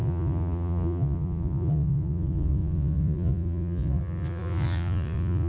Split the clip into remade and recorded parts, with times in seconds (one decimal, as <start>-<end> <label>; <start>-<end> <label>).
0.0-5.5 remade